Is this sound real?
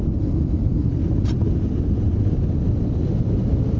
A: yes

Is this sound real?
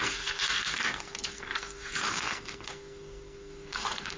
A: no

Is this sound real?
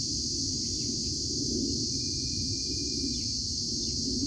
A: yes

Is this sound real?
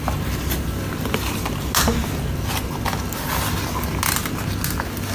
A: yes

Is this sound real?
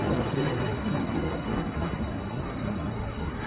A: no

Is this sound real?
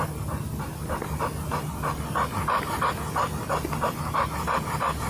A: yes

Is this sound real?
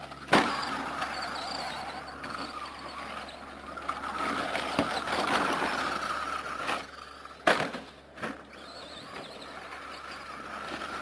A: yes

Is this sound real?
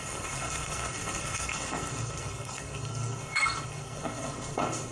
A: no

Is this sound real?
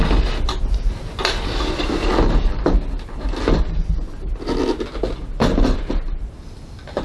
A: yes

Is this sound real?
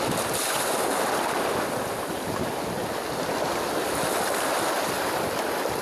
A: yes